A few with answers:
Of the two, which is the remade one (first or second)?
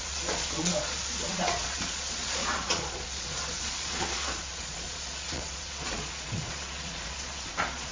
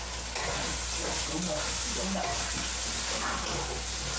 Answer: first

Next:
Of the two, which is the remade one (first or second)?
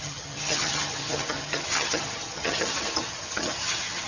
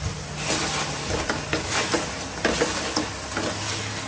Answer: first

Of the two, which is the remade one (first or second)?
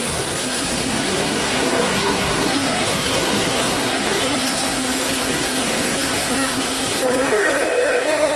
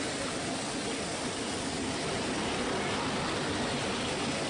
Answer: first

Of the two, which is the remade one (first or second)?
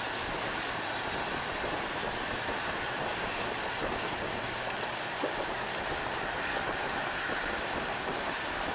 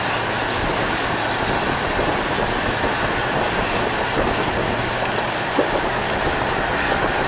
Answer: first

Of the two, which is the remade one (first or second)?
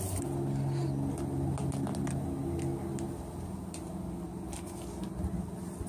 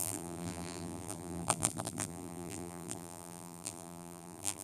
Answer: second